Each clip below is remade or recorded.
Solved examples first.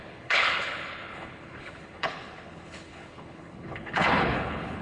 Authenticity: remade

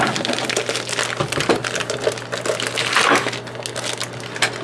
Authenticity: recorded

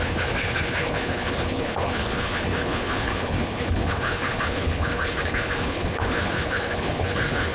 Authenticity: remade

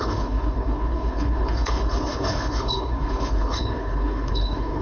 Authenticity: remade